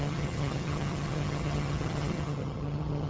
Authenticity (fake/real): fake